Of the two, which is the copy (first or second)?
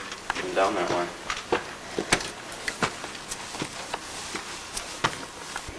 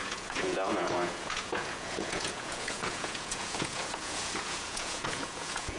second